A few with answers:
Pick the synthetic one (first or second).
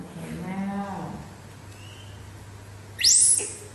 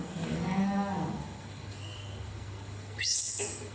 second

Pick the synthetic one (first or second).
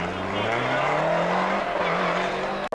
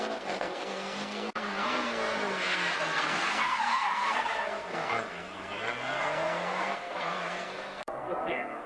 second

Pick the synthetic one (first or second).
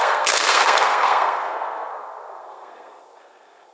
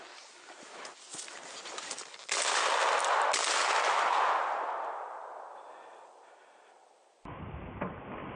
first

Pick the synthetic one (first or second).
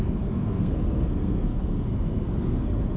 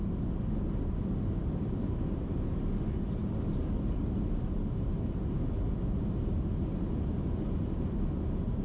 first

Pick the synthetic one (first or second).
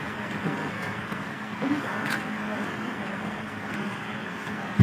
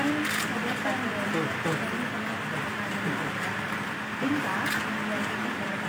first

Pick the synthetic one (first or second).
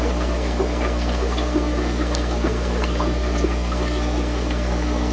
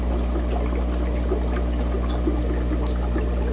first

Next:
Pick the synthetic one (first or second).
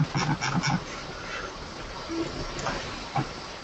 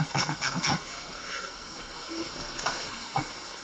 second